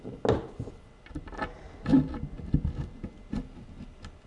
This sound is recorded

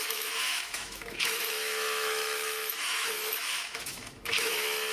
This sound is remade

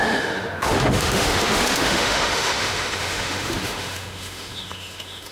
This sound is remade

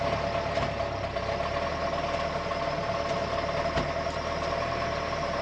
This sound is recorded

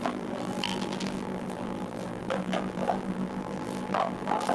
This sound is remade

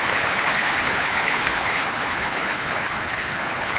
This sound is remade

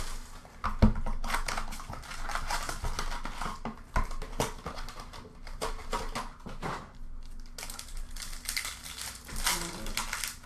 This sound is recorded